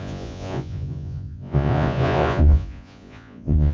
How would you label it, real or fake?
fake